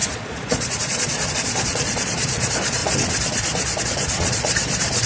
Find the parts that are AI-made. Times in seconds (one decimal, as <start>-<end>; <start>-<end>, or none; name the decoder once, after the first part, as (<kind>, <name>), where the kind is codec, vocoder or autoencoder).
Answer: 0.0-5.1 (vocoder, Vocos)